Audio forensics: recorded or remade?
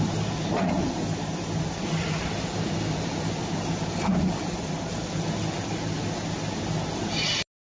recorded